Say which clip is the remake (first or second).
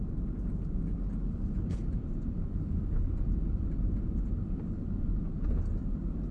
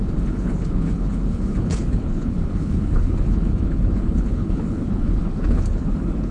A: second